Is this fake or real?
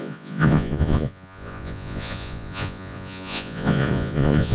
fake